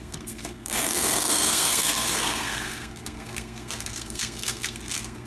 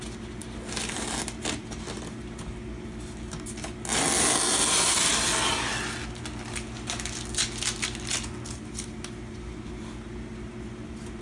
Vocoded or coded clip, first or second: first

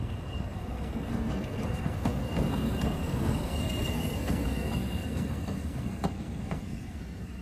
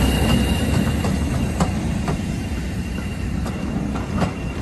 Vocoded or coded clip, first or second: first